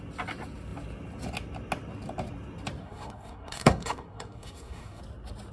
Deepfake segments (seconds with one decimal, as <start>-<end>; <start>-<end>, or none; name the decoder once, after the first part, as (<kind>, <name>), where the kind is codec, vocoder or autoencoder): 2.8-5.0 (codec, SNAC)